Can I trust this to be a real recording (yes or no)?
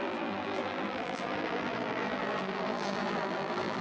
no